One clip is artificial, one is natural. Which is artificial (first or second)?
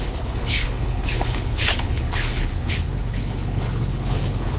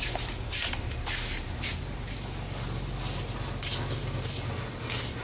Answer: first